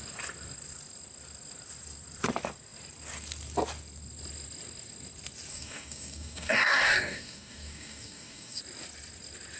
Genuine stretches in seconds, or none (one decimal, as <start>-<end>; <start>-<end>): 0.0-5.5; 8.6-9.6